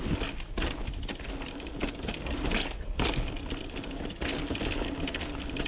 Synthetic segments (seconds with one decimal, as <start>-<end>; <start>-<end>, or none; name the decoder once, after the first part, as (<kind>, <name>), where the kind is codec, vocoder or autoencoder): none